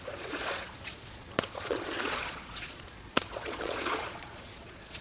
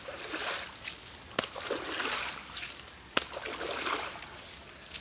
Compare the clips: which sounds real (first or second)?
second